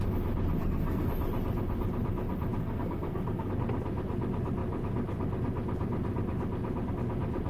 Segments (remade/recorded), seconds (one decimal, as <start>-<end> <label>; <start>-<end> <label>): 0.0-0.6 recorded; 0.6-1.1 remade; 1.1-2.6 recorded; 2.6-3.5 remade; 3.5-7.5 recorded

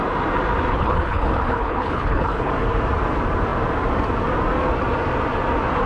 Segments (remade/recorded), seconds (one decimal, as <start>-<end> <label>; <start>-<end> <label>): 0.0-0.7 recorded; 0.7-2.5 remade; 2.5-5.9 recorded

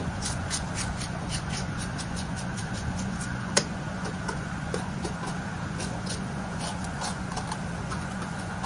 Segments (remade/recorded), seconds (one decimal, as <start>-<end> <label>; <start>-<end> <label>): 0.0-7.3 remade; 7.3-7.8 recorded; 7.8-8.7 remade